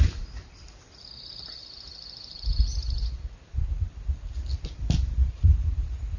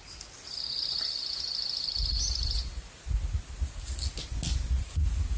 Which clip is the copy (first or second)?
first